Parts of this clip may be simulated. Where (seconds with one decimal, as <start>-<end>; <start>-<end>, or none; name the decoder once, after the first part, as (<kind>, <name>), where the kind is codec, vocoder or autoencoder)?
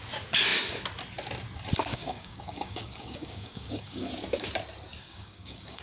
1.9-4.1 (codec, DAC); 5.0-5.8